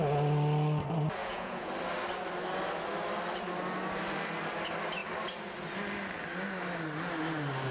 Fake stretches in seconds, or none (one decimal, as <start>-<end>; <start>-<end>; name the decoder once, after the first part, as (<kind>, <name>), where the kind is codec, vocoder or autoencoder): 1.2-1.7 (vocoder, Vocos)